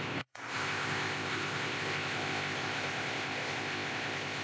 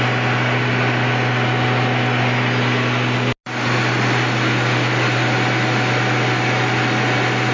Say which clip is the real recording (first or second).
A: second